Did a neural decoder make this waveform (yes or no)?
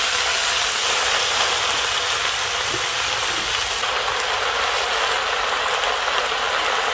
no